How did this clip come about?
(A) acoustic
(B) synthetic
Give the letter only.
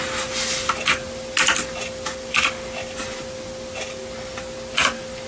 A